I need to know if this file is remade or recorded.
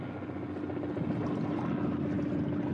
recorded